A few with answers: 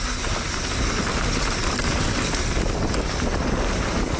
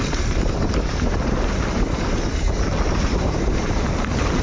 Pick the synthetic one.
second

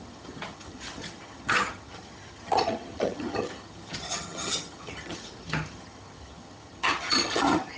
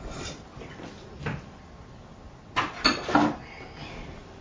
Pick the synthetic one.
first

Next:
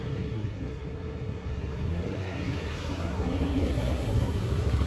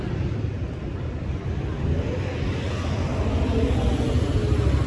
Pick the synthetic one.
first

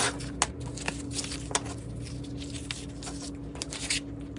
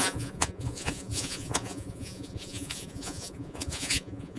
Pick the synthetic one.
second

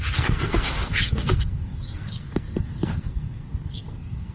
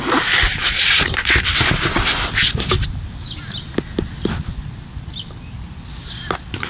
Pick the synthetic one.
first